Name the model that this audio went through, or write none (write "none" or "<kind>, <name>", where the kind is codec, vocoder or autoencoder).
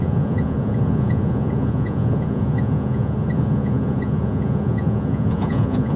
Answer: vocoder, Vocos